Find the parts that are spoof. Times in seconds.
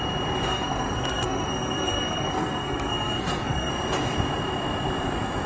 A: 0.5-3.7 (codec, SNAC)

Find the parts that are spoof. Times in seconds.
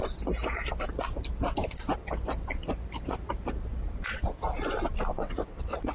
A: 3.7-4.2 (vocoder, WaveNeXt); 5.1-5.9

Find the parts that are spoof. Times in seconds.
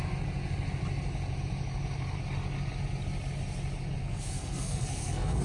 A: 4.0-5.4 (codec, SNAC)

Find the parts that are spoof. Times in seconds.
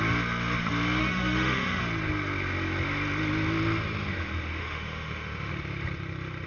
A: 1.0-1.8 (autoencoder, DAC-VAE); 4.6-5.5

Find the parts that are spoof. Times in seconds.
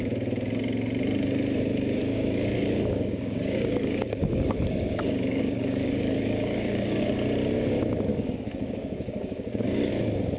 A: 2.0-7.1 (codec, DAC); 8.1-9.9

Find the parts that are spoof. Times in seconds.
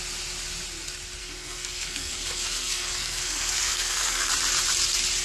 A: 1.2-4.3 (codec, SNAC)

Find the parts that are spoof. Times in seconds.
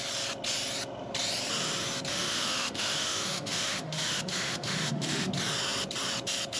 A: 2.1-5.3 (autoencoder, DAC-VAE)